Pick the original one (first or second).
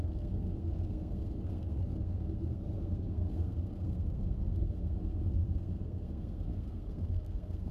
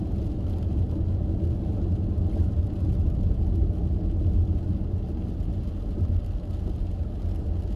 second